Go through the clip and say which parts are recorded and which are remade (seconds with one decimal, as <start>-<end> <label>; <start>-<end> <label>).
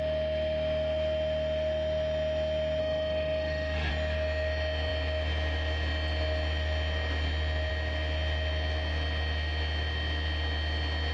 0.0-2.8 recorded; 2.8-3.9 remade; 3.9-11.1 recorded